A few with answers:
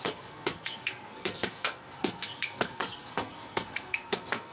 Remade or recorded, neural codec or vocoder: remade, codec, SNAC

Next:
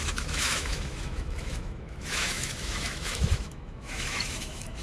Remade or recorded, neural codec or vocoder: remade, autoencoder, DAC-VAE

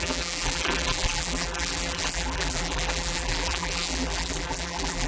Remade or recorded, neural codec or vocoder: remade, vocoder, BigVGAN v2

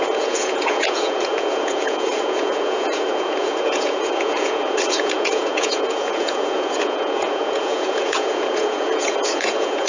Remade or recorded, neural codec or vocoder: remade, vocoder, Vocos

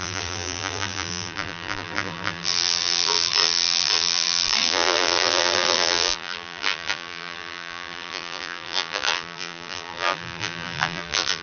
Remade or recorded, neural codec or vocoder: remade, vocoder, BigVGAN v2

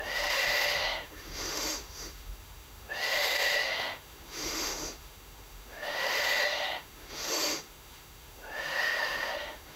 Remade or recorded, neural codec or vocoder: remade, autoencoder, DAC-VAE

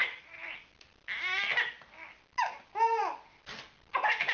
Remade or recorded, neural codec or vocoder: recorded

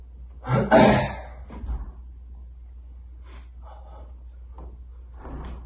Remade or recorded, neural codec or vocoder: recorded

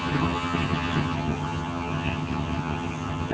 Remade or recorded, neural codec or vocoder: remade, vocoder, HiFi-GAN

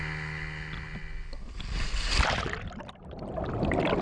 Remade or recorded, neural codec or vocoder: recorded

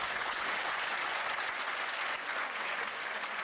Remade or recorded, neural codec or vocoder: remade, vocoder, Vocos